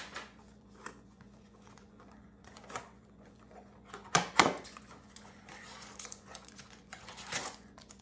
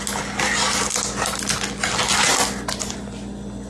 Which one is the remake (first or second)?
first